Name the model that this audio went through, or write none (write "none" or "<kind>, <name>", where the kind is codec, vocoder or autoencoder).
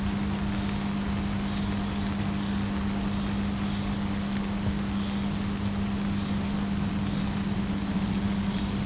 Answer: none